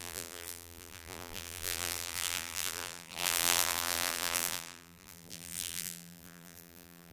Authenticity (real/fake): fake